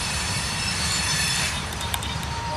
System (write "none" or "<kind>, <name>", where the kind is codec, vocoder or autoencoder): vocoder, BigVGAN v2